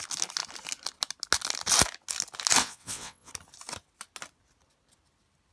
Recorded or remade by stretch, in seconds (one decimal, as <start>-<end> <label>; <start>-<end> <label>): 0.0-2.6 recorded; 2.6-3.3 remade; 3.3-5.5 recorded